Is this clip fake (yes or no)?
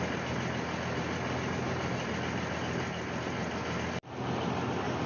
no